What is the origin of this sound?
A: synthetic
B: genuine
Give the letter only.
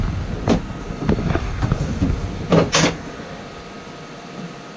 B